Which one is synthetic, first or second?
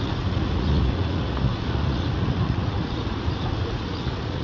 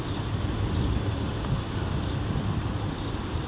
first